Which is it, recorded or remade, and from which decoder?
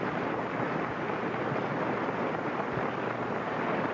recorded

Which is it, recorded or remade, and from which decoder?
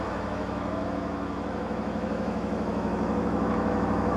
remade, autoencoder, DAC-VAE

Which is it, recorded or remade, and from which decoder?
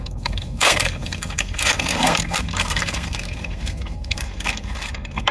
remade, codec, SNAC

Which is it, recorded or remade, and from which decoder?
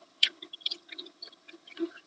remade, vocoder, HiFi-GAN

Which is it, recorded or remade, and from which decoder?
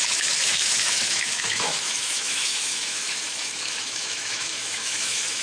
remade, autoencoder, DAC-VAE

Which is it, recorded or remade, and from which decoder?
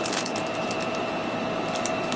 recorded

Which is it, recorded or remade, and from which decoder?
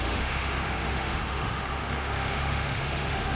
remade, autoencoder, DAC-VAE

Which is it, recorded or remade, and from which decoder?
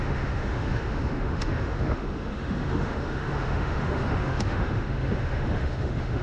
remade, autoencoder, DAC-VAE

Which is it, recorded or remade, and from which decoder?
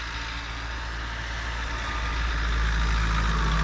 recorded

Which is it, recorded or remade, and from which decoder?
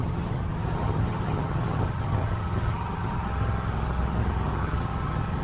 remade, vocoder, HiFi-GAN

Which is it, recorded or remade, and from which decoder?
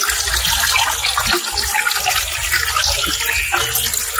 recorded